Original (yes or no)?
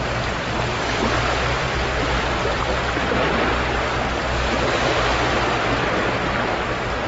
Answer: yes